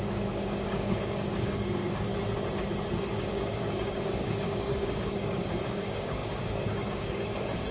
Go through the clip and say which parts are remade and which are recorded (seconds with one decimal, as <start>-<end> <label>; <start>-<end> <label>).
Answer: 0.0-2.1 remade; 2.1-3.2 recorded; 3.2-7.7 remade